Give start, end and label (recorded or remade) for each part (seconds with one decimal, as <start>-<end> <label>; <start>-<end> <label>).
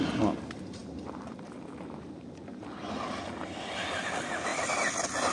0.0-5.3 recorded